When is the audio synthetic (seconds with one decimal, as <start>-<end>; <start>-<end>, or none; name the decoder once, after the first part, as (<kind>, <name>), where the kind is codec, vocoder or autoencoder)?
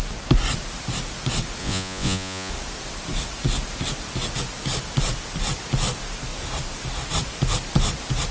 1.6-2.5 (vocoder, Vocos)